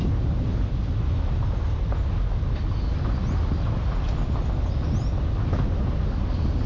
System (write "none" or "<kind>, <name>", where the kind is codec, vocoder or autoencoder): none